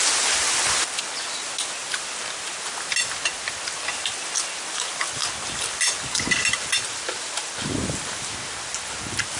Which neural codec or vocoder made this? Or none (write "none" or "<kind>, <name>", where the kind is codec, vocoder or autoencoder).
none